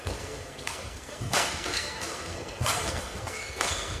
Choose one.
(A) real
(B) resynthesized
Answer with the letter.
B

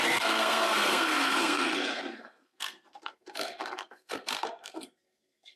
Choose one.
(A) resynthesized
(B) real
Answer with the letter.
A